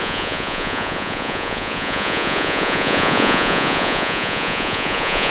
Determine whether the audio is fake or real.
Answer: fake